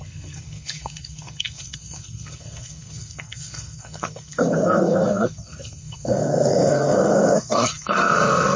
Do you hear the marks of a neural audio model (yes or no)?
yes